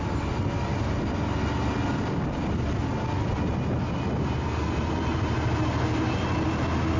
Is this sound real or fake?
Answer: real